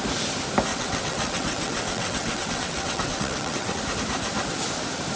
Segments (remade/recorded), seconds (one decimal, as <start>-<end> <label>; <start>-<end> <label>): 0.0-0.7 recorded; 0.7-3.8 remade; 3.8-5.2 recorded